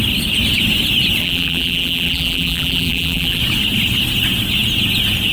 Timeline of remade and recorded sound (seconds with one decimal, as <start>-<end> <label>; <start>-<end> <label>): 0.0-1.2 recorded; 1.2-3.4 remade; 3.4-5.3 recorded